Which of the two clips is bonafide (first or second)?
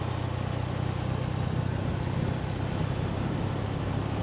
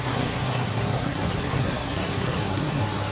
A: first